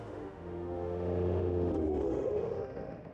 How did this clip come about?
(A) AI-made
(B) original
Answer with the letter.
A